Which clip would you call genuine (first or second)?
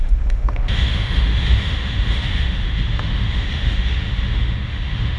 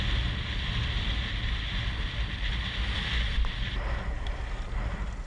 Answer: second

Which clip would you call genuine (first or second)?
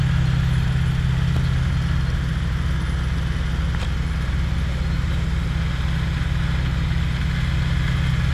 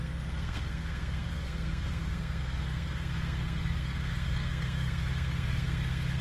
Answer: first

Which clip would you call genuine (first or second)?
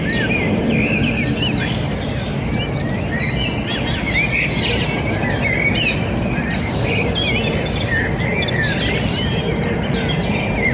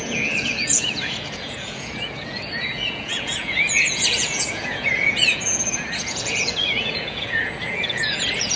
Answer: first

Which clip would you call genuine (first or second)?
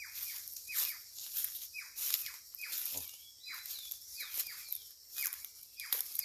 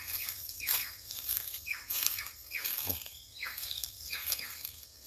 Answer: first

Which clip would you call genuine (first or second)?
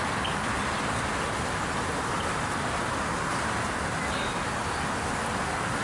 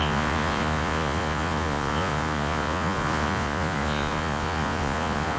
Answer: first